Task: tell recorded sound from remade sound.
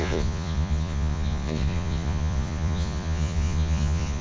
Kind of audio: remade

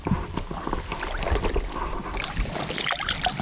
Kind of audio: recorded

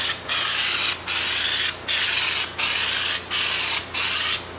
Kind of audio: recorded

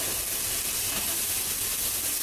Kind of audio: recorded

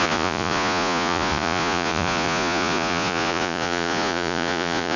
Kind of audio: remade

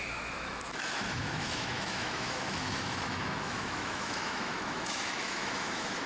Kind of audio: remade